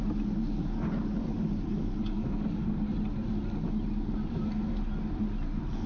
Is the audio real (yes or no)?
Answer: yes